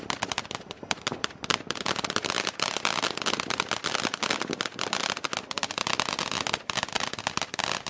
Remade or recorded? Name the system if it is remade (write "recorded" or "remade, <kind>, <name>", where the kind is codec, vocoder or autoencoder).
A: recorded